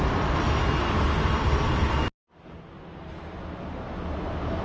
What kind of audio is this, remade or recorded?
recorded